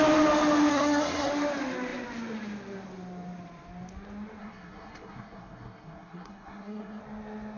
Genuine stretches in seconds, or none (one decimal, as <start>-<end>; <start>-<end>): 0.0-0.7; 1.3-4.4; 7.0-7.6